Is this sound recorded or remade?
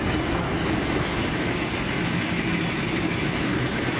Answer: remade